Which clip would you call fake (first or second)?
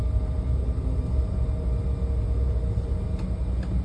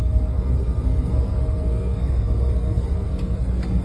second